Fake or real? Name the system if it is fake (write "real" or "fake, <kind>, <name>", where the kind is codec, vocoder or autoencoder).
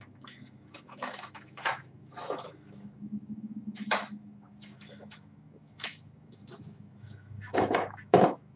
fake, autoencoder, DAC-VAE